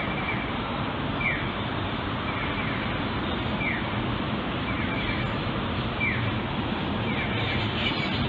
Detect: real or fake real